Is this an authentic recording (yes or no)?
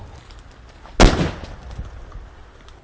yes